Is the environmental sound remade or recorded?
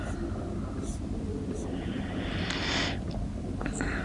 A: recorded